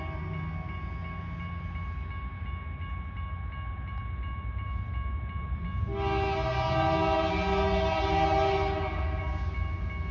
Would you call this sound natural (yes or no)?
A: yes